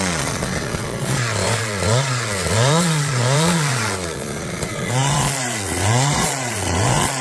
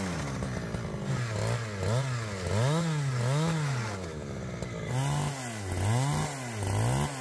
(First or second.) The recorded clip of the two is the second